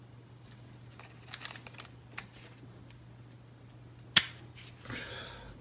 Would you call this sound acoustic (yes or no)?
yes